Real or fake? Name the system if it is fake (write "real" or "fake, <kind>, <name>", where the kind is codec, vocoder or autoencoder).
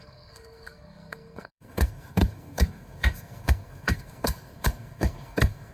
fake, codec, SNAC